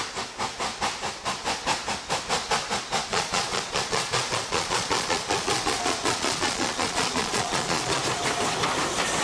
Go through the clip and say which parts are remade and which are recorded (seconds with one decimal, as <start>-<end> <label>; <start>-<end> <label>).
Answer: 0.0-3.1 recorded; 3.1-8.0 remade; 8.0-9.2 recorded